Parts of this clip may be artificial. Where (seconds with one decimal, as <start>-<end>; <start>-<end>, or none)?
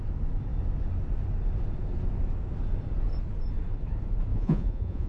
4.3-5.1